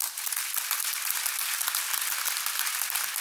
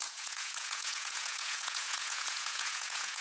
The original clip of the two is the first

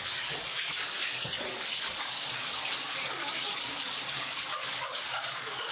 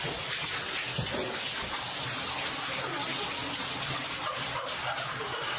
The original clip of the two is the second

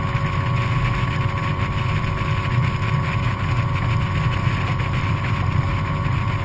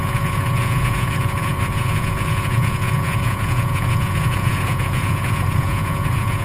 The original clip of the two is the first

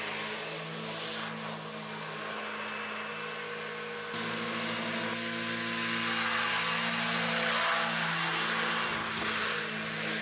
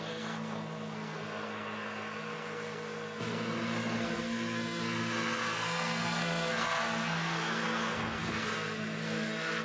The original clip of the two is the first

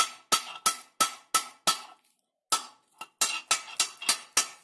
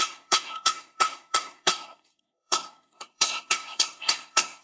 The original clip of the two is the first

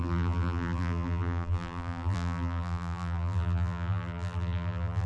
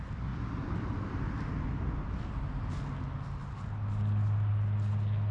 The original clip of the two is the second